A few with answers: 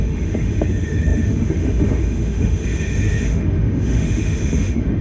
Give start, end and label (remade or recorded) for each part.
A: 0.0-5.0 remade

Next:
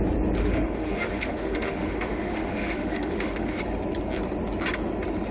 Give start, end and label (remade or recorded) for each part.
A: 0.0-0.4 recorded; 0.4-3.6 remade; 3.6-5.3 recorded

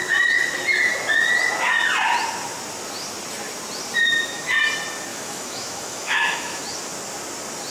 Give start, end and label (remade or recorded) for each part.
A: 0.0-4.0 recorded; 4.0-4.5 remade; 4.5-5.1 recorded; 5.1-6.6 remade; 6.6-7.7 recorded